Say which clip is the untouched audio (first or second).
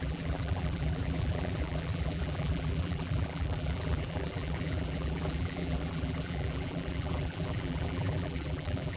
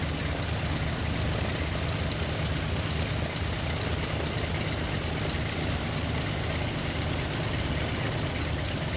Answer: second